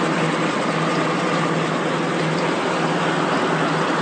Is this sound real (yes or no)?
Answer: yes